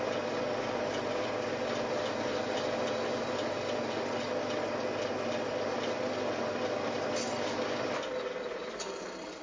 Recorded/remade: recorded